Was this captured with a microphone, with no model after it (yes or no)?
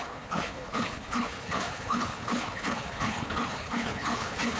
no